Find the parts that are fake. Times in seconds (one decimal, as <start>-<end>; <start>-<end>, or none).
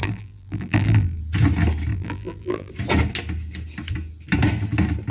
0.0-1.2; 1.9-2.7